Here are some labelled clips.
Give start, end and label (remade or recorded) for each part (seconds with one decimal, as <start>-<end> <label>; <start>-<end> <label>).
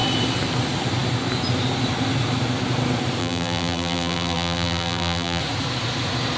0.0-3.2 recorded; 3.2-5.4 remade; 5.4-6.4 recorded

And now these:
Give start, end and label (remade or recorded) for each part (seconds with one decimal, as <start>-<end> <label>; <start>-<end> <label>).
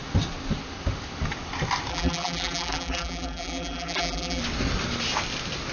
0.0-1.9 recorded; 1.9-4.4 remade; 4.4-5.7 recorded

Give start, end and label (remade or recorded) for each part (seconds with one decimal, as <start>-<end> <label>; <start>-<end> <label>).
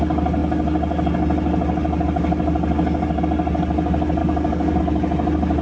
0.0-4.2 recorded; 4.2-4.8 remade; 4.8-5.6 recorded